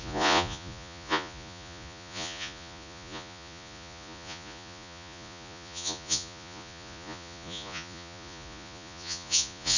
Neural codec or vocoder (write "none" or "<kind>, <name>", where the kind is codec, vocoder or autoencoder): vocoder, Vocos